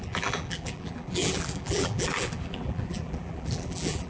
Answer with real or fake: fake